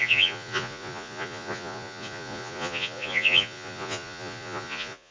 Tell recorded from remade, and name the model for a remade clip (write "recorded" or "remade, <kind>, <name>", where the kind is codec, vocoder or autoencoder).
remade, vocoder, Vocos